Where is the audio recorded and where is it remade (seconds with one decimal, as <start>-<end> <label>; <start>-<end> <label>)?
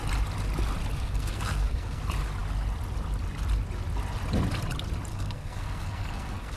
0.0-0.9 recorded; 0.9-2.0 remade; 2.0-5.1 recorded; 5.1-6.6 remade